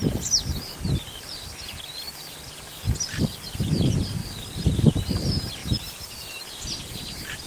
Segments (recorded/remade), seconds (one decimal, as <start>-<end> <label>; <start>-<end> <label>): 0.0-4.2 remade; 4.2-5.1 recorded; 5.1-7.5 remade